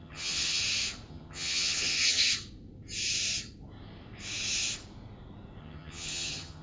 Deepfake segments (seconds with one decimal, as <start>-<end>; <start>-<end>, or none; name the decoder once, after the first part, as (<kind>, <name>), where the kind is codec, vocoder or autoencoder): 0.0-0.6 (vocoder, HiFi-GAN); 1.1-2.3; 5.6-6.6